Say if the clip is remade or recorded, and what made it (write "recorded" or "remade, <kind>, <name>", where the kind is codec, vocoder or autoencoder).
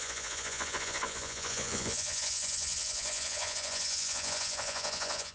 remade, vocoder, Vocos